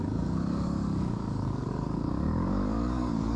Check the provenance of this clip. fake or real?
fake